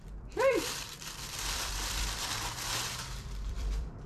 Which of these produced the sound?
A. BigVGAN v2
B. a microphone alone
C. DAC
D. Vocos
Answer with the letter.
A